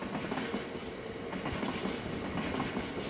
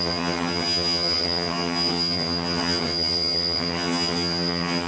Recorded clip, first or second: first